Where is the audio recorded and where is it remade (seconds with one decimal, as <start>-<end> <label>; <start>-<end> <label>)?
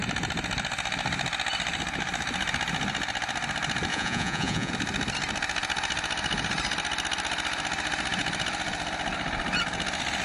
0.0-3.9 recorded; 3.9-4.7 remade; 4.7-10.2 recorded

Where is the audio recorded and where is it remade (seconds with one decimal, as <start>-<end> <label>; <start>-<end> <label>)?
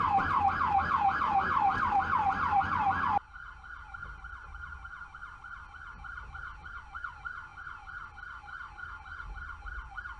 0.0-10.2 recorded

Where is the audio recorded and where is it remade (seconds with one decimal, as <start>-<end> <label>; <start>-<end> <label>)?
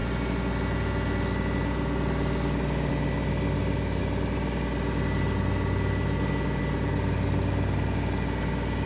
0.0-8.9 recorded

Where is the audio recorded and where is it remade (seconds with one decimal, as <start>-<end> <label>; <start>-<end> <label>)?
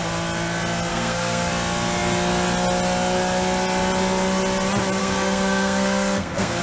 0.0-0.9 recorded; 0.9-1.5 remade; 1.5-5.0 recorded; 5.0-6.6 remade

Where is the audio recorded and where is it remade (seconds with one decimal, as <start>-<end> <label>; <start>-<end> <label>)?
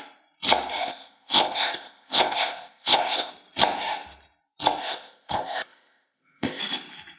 0.0-0.8 recorded; 0.8-3.3 remade; 3.3-4.8 recorded; 4.8-6.6 remade; 6.6-7.2 recorded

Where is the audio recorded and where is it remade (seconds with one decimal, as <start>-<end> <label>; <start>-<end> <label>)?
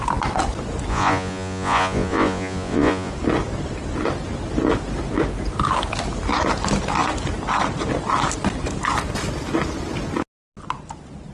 0.0-0.9 recorded; 0.9-3.1 remade; 3.1-11.3 recorded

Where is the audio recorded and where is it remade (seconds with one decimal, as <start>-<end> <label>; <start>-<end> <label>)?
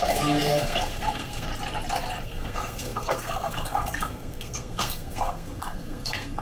0.0-1.5 remade; 1.5-2.2 recorded; 2.2-6.4 remade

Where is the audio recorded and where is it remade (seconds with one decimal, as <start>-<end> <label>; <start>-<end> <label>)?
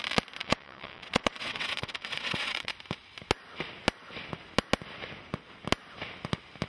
0.0-0.4 recorded; 0.4-2.7 remade; 2.7-6.7 recorded